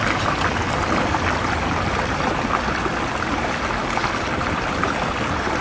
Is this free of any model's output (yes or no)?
yes